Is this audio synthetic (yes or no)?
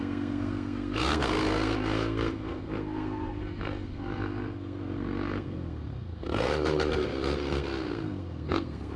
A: yes